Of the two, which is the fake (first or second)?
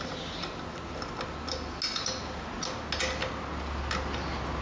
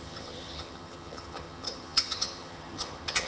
second